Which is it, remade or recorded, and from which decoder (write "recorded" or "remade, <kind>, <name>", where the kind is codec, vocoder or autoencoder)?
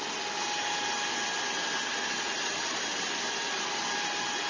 recorded